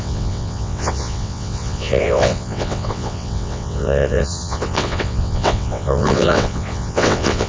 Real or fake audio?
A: fake